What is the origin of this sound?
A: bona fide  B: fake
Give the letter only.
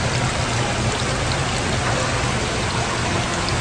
A